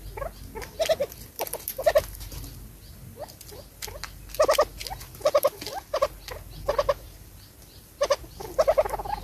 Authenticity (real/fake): real